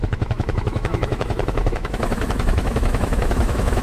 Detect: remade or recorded remade